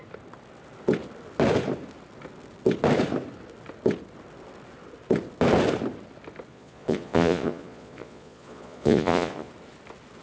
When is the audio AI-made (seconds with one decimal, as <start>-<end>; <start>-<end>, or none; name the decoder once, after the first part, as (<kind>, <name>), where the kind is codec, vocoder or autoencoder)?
6.5-9.5 (vocoder, Vocos)